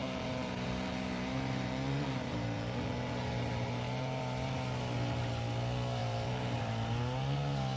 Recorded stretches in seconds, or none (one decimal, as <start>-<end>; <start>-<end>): 4.2-6.0; 6.6-7.8